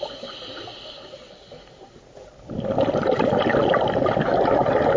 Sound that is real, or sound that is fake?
real